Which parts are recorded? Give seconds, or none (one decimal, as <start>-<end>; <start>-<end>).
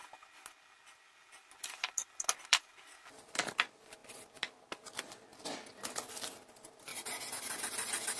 0.0-1.5; 4.0-5.0; 6.9-7.6